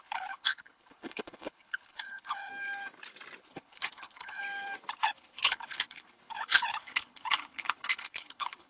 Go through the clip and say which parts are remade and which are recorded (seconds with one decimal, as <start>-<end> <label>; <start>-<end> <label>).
0.0-2.5 remade; 2.5-3.4 recorded; 3.4-4.4 remade; 4.4-4.9 recorded; 4.9-8.7 remade